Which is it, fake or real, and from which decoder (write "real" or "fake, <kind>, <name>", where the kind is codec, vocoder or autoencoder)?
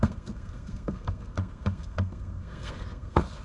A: fake, codec, SNAC